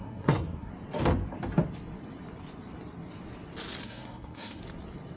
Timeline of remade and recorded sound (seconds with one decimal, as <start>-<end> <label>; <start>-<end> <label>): 0.0-0.7 remade; 0.7-3.8 recorded; 3.8-4.6 remade; 4.6-5.2 recorded

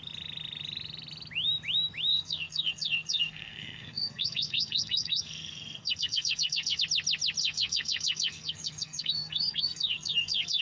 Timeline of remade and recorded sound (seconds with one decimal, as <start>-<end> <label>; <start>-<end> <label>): 0.0-2.1 recorded; 2.1-6.8 remade; 6.8-7.4 recorded; 7.4-10.6 remade

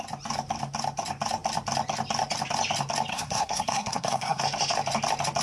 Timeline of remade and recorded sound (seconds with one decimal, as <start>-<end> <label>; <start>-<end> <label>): 0.0-3.1 recorded; 3.1-4.4 remade; 4.4-5.4 recorded

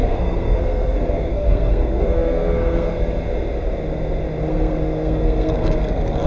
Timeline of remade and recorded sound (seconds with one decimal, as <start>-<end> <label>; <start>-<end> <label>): 0.0-3.0 remade; 3.0-4.5 recorded; 4.5-6.3 remade

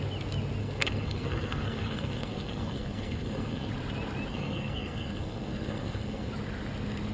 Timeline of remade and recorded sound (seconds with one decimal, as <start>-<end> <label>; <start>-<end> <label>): 0.0-0.6 recorded; 0.6-3.7 remade; 3.7-4.3 recorded; 4.3-6.3 remade; 6.3-7.1 recorded

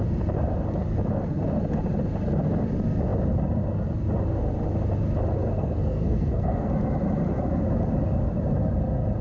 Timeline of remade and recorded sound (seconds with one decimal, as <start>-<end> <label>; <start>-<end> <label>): 0.0-5.4 recorded; 5.4-6.7 remade; 6.7-9.2 recorded

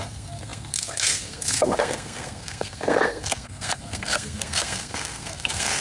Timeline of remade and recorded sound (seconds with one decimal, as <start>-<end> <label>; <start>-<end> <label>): 0.0-5.8 remade